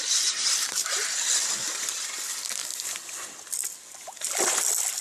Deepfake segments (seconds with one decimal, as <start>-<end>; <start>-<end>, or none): none